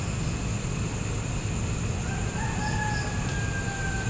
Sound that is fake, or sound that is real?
real